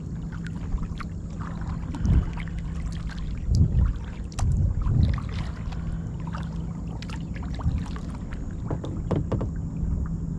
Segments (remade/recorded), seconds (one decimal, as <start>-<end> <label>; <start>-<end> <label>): 0.0-10.4 recorded